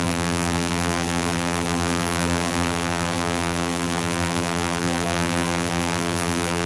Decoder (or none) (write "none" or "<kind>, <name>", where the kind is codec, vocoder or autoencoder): vocoder, BigVGAN v2